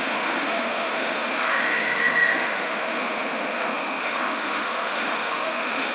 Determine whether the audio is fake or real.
fake